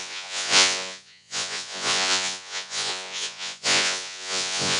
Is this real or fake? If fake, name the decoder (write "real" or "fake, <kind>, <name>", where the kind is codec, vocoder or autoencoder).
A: fake, vocoder, Vocos